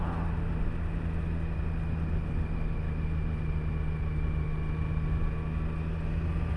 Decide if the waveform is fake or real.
real